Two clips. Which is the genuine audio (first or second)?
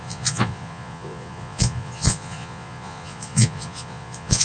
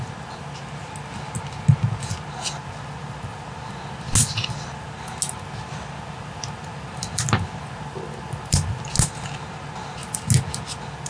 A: second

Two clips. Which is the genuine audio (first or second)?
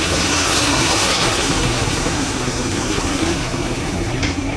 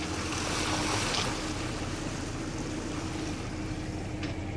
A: second